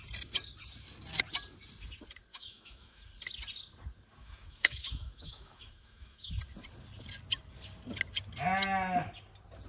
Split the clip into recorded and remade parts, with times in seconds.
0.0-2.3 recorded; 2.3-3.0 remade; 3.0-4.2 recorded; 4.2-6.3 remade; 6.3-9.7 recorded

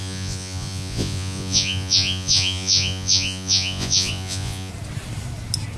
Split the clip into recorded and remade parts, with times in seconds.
0.0-4.7 remade; 4.7-5.8 recorded

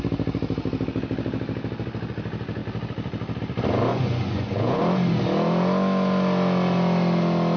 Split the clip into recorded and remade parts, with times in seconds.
0.0-3.9 recorded; 3.9-4.8 remade; 4.8-7.6 recorded

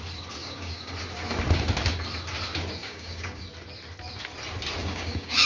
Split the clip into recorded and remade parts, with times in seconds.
0.0-0.4 recorded; 0.4-0.9 remade; 0.9-2.8 recorded; 2.8-3.4 remade; 3.4-4.8 recorded; 4.8-5.5 remade

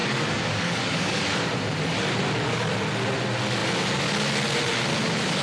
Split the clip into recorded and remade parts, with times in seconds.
0.0-1.2 remade; 1.2-5.4 recorded

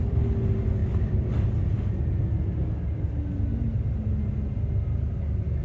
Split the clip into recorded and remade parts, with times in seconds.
0.0-5.6 recorded